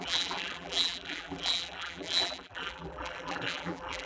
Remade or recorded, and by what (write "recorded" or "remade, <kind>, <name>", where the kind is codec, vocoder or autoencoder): remade, vocoder, BigVGAN v2